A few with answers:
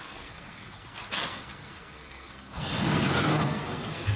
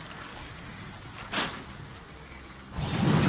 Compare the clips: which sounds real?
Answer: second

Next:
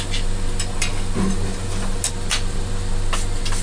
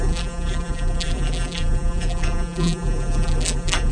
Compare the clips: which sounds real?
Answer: first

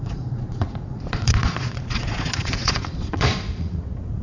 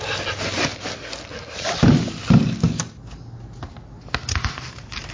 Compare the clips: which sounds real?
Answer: second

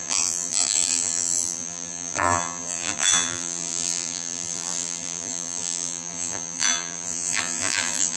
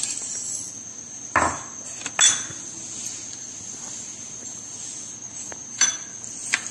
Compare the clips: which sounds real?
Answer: second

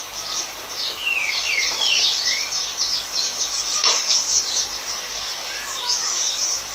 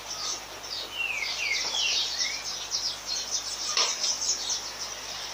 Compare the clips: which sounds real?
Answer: second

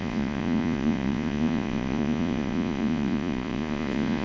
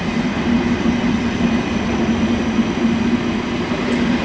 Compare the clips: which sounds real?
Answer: second